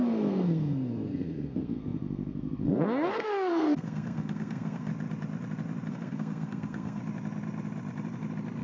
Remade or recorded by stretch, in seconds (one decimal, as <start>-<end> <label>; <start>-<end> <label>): 0.0-4.9 remade; 4.9-5.9 recorded; 5.9-7.0 remade; 7.0-8.6 recorded